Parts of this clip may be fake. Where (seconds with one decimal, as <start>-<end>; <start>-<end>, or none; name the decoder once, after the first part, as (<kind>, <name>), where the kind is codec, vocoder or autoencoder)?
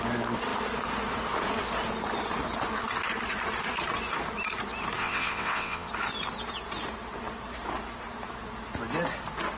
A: 5.0-5.9 (vocoder, WaveNeXt)